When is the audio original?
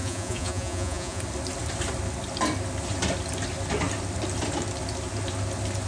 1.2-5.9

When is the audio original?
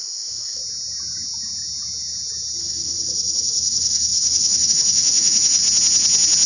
0.6-2.6; 5.6-6.5